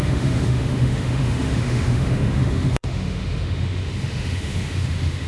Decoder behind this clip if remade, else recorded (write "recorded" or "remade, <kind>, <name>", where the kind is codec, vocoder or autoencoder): remade, autoencoder, DAC-VAE